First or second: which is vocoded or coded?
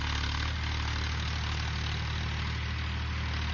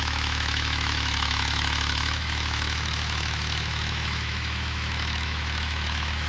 second